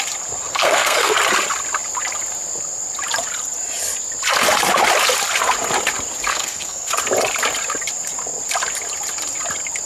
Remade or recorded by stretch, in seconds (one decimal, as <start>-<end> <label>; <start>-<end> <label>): 0.0-0.5 recorded; 0.5-1.1 remade; 1.1-6.3 recorded; 6.3-6.9 remade; 6.9-9.9 recorded